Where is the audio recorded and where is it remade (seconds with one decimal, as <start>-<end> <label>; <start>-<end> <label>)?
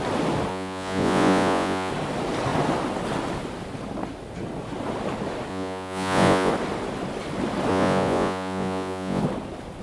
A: 0.0-0.5 recorded; 0.5-1.9 remade; 1.9-5.5 recorded; 5.5-6.5 remade; 6.5-7.7 recorded; 7.7-9.2 remade; 9.2-9.8 recorded